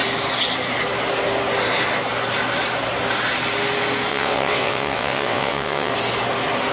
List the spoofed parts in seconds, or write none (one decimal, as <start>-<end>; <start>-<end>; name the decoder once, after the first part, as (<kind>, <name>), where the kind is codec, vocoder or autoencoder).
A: 4.1-5.9 (vocoder, WaveNeXt)